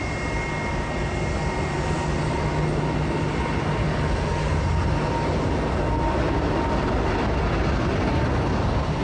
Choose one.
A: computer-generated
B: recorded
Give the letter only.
B